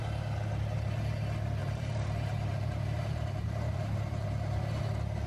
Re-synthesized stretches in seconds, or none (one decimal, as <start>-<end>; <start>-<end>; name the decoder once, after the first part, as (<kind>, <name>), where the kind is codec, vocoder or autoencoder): 1.6-4.8 (vocoder, BigVGAN v2)